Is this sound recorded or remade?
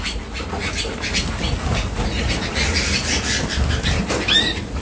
recorded